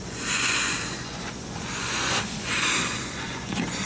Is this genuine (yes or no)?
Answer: no